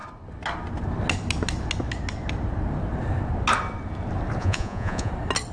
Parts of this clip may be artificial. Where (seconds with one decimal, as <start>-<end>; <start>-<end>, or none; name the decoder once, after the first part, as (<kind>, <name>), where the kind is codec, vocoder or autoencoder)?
4.4-5.1 (vocoder, Vocos)

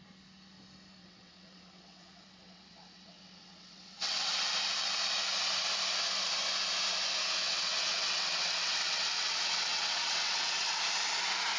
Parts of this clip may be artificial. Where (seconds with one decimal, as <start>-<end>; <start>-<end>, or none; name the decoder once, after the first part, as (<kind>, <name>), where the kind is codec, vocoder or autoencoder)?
1.0-4.3 (vocoder, WaveNeXt); 7.4-10.8

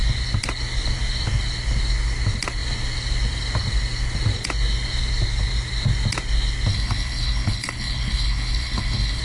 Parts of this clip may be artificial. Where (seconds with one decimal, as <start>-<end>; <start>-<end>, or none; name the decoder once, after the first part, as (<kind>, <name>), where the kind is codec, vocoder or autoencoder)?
6.7-9.2 (codec, HILCodec)

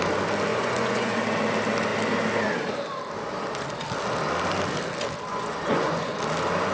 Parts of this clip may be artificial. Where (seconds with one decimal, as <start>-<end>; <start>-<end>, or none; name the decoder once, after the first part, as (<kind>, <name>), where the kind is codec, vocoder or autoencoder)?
0.5-1.2 (vocoder, Vocos); 5.3-6.2